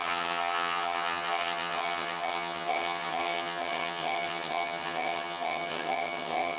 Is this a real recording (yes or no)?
no